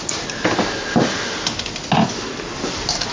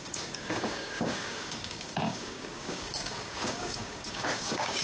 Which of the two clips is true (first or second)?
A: first